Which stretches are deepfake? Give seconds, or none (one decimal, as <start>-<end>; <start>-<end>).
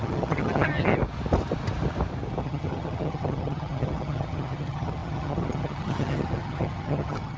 0.0-1.0; 2.4-7.4